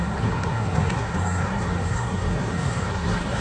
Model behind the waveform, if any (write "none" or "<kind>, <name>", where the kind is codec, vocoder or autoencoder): codec, SNAC